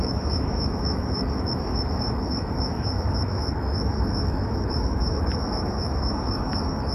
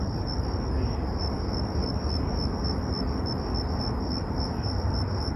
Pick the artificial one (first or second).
first